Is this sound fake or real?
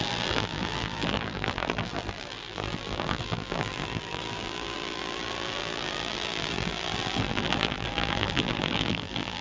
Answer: fake